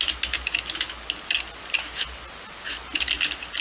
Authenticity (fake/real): real